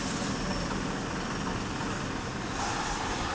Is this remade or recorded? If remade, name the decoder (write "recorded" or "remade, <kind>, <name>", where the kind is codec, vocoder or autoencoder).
recorded